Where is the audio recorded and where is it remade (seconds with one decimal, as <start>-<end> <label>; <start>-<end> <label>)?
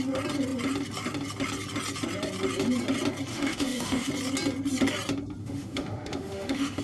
0.0-3.3 recorded; 3.3-4.1 remade; 4.1-5.4 recorded; 5.4-6.8 remade